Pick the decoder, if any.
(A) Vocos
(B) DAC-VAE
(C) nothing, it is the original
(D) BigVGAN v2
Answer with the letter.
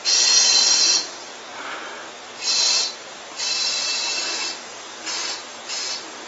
D